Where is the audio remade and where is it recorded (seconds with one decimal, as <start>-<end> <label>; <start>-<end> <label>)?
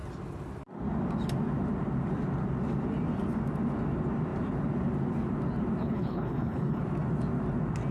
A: 0.0-5.8 recorded; 5.8-6.8 remade; 6.8-7.9 recorded